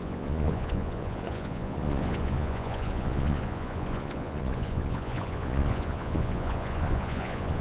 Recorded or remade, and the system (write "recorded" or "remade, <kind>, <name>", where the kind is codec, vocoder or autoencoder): remade, vocoder, Vocos